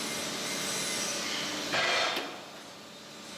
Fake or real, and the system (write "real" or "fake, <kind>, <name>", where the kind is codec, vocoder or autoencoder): real